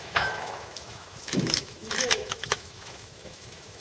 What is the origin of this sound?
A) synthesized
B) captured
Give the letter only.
A